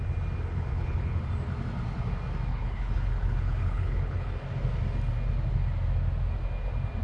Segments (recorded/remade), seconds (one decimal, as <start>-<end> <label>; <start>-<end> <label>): 0.0-0.7 recorded; 0.7-1.2 remade; 1.2-2.5 recorded; 2.5-4.3 remade; 4.3-7.0 recorded